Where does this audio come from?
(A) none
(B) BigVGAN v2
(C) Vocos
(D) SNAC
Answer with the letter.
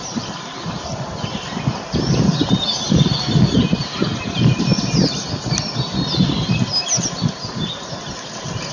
A